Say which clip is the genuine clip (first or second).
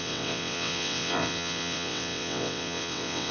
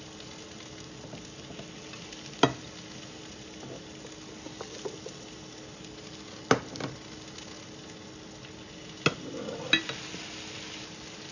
second